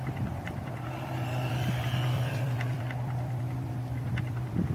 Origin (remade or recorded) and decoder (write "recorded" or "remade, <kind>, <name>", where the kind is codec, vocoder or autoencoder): remade, vocoder, BigVGAN v2